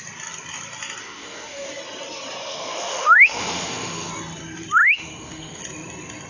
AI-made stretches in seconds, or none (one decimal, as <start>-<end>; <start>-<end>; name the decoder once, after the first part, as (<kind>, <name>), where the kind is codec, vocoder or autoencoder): 1.0-1.7 (autoencoder, DAC-VAE); 2.4-4.1; 4.8-5.6